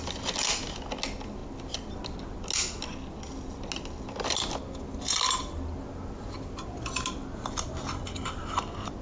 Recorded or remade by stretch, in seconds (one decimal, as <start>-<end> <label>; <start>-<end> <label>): 0.0-9.0 recorded